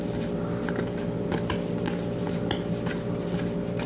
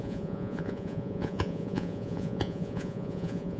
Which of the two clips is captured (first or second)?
first